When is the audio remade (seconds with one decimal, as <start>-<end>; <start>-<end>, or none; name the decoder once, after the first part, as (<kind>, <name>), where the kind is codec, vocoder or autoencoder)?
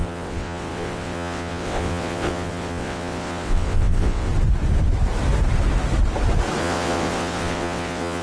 0.0-4.3 (vocoder, WaveNeXt); 6.6-8.2